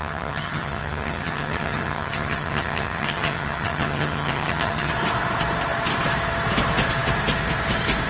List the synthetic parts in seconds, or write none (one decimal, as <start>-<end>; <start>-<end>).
0.0-4.9